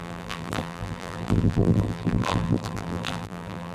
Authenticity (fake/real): fake